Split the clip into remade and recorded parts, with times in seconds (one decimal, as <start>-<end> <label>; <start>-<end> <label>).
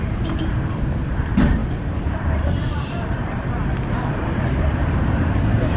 0.0-5.8 remade